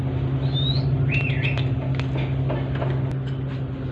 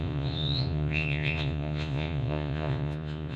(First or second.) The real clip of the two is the first